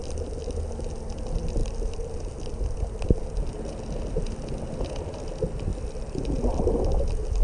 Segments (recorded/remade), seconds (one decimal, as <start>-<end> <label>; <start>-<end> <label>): 0.0-7.4 recorded